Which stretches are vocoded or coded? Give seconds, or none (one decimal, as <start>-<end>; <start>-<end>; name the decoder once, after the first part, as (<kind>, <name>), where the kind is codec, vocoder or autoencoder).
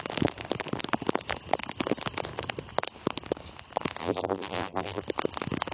4.0-5.0 (vocoder, BigVGAN v2)